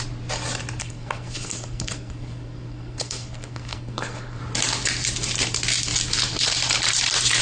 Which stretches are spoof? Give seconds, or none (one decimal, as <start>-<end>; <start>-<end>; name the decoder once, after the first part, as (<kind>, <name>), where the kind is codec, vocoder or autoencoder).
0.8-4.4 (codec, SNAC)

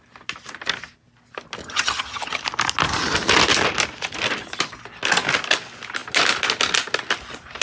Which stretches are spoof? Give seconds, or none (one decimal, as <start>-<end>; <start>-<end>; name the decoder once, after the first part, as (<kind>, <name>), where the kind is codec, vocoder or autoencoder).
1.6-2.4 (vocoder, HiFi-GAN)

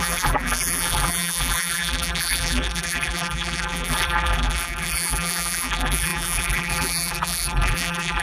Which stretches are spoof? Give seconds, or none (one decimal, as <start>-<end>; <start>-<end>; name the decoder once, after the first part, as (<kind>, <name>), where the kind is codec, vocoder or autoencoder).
0.0-8.2 (vocoder, BigVGAN v2)